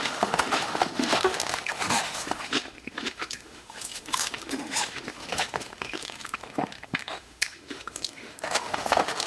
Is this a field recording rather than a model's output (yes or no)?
no